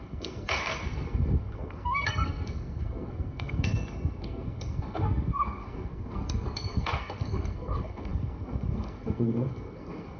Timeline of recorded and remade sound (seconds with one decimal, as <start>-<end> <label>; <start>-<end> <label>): 0.0-10.2 remade